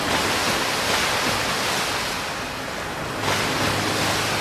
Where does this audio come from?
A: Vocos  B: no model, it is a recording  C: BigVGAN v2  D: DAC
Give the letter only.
B